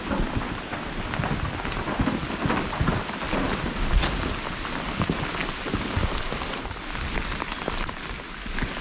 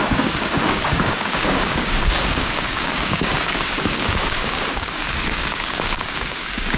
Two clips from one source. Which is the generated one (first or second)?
second